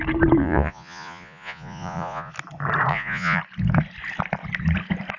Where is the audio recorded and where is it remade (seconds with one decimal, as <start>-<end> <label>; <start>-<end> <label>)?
0.0-0.4 recorded; 0.4-2.3 remade; 2.3-2.9 recorded; 2.9-3.4 remade; 3.4-5.2 recorded